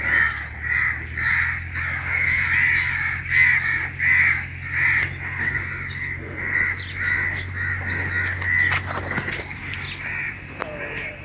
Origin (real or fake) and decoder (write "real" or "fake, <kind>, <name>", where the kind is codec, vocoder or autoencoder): real